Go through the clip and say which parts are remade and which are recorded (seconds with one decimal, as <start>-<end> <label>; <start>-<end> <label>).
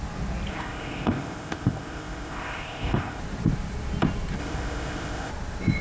0.0-0.5 recorded; 0.5-3.2 remade; 3.2-4.4 recorded; 4.4-5.3 remade; 5.3-5.8 recorded